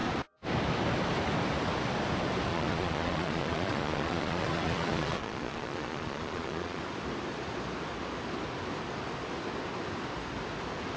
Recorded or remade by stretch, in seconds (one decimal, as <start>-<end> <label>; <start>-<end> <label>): 0.0-2.5 recorded; 2.5-6.8 remade; 6.8-11.0 recorded